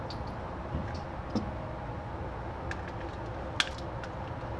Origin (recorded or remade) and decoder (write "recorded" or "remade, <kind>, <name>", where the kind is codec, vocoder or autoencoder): recorded